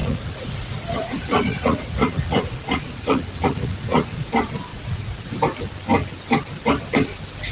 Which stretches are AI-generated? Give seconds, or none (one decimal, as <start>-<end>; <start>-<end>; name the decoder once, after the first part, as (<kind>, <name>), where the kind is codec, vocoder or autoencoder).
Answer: 0.0-4.3 (vocoder, Vocos); 4.7-5.3